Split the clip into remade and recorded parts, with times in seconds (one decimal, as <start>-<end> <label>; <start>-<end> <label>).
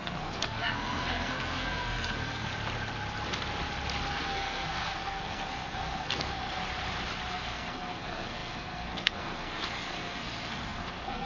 0.0-2.5 remade; 2.5-4.1 recorded; 4.1-6.6 remade; 6.6-7.3 recorded; 7.3-11.3 remade